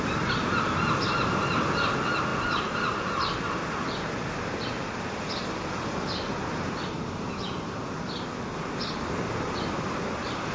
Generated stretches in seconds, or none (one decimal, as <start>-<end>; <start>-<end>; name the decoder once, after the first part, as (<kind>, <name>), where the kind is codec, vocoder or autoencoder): none